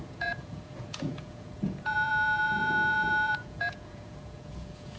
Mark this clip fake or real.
fake